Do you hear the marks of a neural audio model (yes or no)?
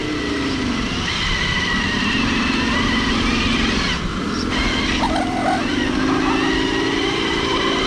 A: no